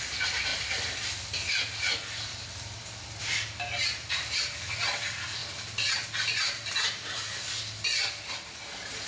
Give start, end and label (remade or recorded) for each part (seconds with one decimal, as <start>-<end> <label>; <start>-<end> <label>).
0.0-0.5 recorded; 0.5-1.3 remade; 1.3-5.4 recorded; 5.4-8.2 remade; 8.2-9.1 recorded

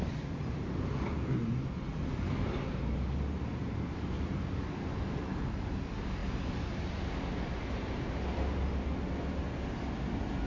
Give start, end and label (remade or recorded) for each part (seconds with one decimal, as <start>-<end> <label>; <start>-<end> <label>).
0.0-10.5 recorded

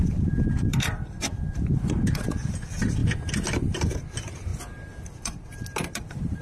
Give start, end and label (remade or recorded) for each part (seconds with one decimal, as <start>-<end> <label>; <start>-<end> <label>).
0.0-3.0 remade; 3.0-3.7 recorded; 3.7-6.4 remade

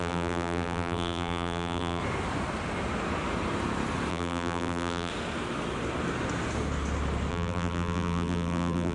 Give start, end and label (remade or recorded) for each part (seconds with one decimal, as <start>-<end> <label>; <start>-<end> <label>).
0.0-2.0 remade; 2.0-4.1 recorded; 4.1-5.1 remade; 5.1-7.3 recorded; 7.3-8.9 remade

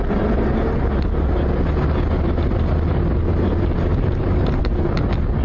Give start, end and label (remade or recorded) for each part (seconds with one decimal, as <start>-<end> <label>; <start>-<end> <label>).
0.0-3.9 recorded; 3.9-4.6 remade; 4.6-5.4 recorded